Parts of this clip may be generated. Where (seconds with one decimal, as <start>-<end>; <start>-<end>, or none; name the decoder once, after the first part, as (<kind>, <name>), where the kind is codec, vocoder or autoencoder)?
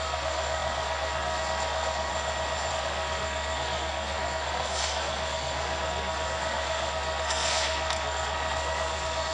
0.0-2.1 (codec, SNAC); 2.7-9.3